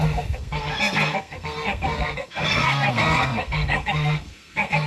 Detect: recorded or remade remade